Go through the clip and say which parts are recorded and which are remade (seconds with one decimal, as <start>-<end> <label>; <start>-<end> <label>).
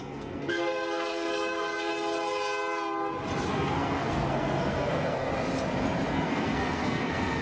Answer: 0.0-1.9 remade; 1.9-3.5 recorded; 3.5-5.3 remade; 5.3-6.1 recorded; 6.1-7.4 remade